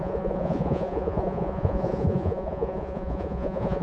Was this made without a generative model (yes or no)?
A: no